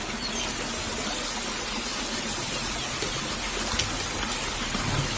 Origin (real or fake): real